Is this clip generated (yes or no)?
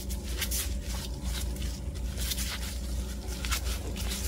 no